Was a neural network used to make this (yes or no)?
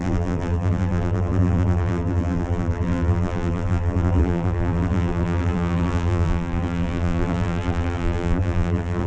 yes